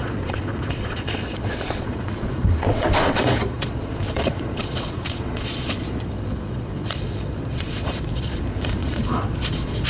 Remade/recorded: remade